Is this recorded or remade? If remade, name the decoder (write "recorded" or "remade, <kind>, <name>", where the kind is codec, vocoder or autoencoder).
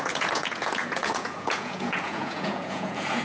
remade, vocoder, Vocos